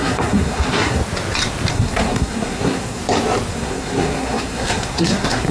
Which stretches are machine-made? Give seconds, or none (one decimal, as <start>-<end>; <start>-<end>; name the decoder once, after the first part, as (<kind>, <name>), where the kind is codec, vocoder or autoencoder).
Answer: 0.0-1.0 (codec, SNAC); 1.7-3.0; 3.5-5.5